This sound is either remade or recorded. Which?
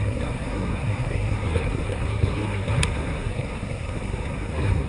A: remade